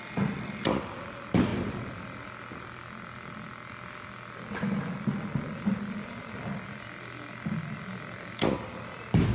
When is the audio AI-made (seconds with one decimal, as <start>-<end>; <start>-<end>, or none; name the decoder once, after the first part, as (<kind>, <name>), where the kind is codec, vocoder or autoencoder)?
none